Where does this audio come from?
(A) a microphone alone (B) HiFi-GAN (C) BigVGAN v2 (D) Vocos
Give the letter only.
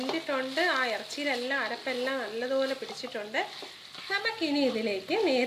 A